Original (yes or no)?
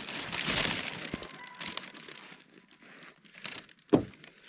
yes